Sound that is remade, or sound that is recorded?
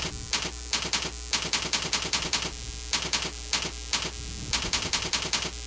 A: recorded